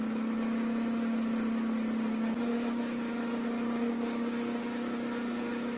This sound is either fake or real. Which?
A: real